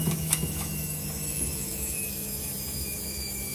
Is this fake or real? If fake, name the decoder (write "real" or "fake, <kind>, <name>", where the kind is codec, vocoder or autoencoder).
fake, autoencoder, DAC-VAE